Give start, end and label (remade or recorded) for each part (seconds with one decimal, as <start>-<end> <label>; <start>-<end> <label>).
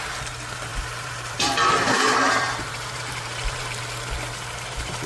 0.0-0.7 recorded; 0.7-3.8 remade; 3.8-5.1 recorded